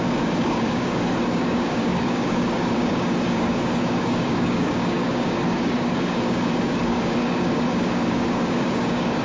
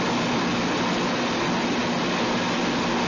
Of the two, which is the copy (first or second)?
first